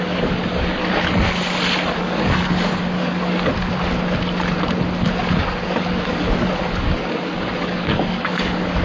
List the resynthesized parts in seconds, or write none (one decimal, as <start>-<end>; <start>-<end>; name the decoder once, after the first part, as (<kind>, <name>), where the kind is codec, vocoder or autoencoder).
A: 0.0-0.8 (codec, DAC); 2.0-3.5; 5.2-8.8